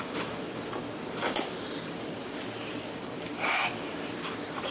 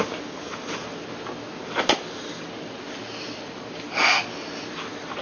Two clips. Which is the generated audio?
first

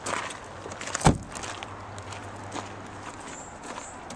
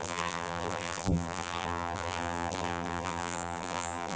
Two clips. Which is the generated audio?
second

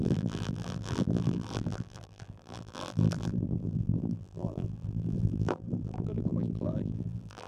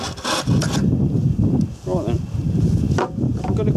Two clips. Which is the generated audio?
first